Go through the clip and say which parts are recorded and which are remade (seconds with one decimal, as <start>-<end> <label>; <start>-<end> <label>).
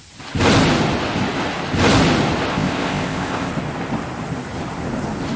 0.0-2.5 recorded; 2.5-3.5 remade; 3.5-5.4 recorded